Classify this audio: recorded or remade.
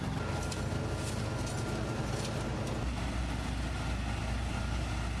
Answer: recorded